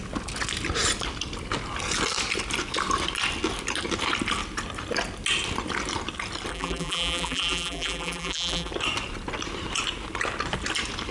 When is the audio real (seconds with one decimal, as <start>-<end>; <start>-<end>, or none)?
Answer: 0.0-6.5; 8.7-11.1